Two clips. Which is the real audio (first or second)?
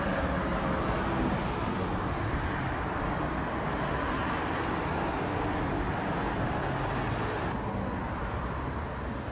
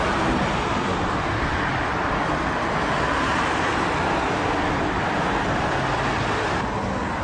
first